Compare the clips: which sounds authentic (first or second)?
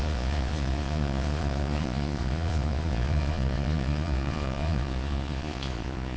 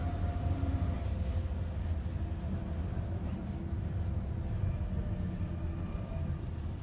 second